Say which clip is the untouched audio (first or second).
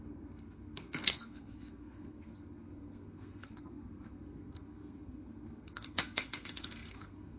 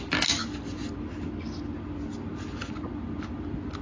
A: second